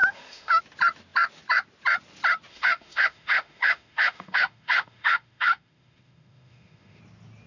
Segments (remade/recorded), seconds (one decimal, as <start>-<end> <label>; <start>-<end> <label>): 0.0-0.6 remade; 0.6-2.5 recorded; 2.5-7.0 remade; 7.0-7.5 recorded